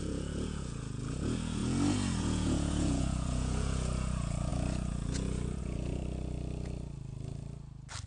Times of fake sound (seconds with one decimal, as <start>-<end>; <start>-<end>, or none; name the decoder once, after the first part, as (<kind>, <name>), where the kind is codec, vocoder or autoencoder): 0.0-6.0 (vocoder, Vocos)